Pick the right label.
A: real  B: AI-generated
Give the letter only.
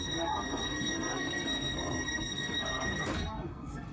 B